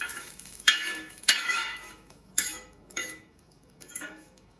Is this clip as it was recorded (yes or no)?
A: no